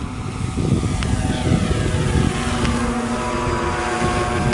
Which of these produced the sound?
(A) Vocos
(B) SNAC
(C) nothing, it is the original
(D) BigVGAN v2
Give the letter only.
C